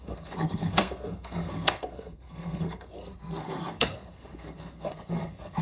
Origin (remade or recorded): remade